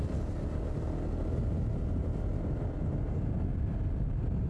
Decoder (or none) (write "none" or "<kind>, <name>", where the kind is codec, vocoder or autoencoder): none